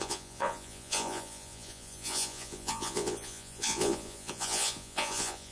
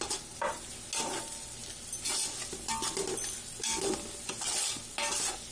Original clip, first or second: second